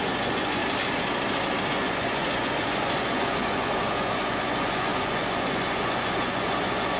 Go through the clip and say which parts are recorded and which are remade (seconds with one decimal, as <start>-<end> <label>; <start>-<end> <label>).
0.0-0.6 remade; 0.6-1.7 recorded; 1.7-7.0 remade